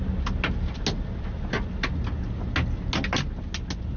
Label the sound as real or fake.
real